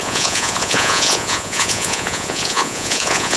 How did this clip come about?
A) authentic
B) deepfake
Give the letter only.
B